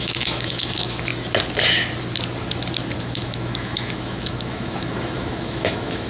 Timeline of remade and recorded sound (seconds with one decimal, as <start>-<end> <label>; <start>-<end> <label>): 0.0-1.1 remade; 1.1-3.0 recorded; 3.0-6.1 remade